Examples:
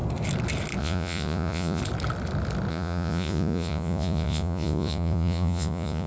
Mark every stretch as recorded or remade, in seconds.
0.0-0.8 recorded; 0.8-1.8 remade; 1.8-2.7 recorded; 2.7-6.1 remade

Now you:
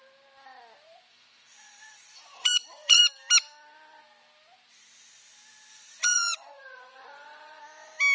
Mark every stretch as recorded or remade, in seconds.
0.0-1.1 recorded; 1.1-3.0 remade; 3.0-5.7 recorded; 5.7-7.6 remade; 7.6-8.1 recorded